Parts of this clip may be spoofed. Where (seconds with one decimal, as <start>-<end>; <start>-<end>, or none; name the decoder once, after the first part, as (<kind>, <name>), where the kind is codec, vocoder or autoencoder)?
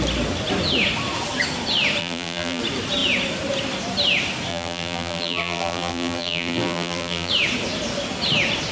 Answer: 2.0-2.6 (vocoder, BigVGAN v2); 4.5-7.3